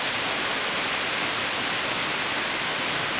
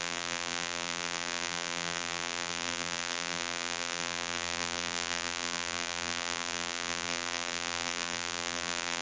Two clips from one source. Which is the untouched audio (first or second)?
first